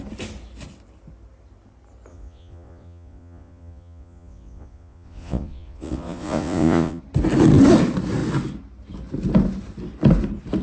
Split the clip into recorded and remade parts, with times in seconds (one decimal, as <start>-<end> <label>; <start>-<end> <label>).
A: 0.0-2.1 recorded; 2.1-7.0 remade; 7.0-10.6 recorded